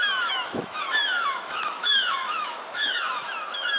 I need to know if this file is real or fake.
fake